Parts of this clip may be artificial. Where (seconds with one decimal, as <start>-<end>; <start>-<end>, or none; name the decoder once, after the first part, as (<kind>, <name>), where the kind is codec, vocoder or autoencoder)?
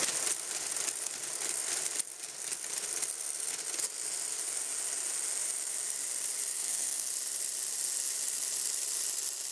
6.5-7.1 (codec, SNAC)